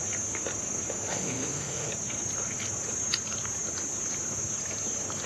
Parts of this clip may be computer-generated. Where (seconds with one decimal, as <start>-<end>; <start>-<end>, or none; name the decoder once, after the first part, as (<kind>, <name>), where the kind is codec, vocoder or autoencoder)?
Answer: 1.1-1.9 (autoencoder, DAC-VAE)